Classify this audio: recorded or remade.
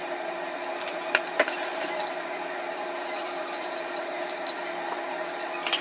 remade